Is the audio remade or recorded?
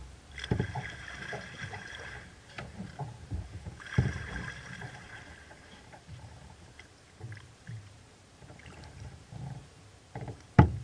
remade